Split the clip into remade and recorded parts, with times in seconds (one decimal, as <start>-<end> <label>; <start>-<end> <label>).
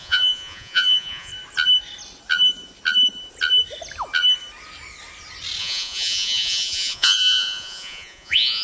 0.0-1.3 remade; 1.3-5.6 recorded; 5.6-8.6 remade